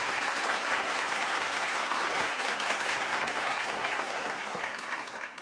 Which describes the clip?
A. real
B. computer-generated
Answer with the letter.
B